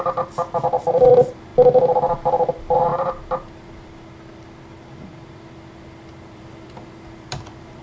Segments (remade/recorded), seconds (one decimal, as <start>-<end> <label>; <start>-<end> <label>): 0.0-1.5 remade; 1.5-2.5 recorded; 2.5-7.8 remade